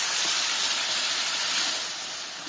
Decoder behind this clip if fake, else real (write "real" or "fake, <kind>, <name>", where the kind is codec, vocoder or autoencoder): real